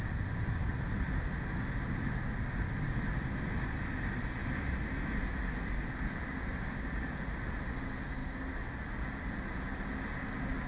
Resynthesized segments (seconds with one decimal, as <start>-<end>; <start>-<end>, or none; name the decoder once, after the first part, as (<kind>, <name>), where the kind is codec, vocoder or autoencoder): none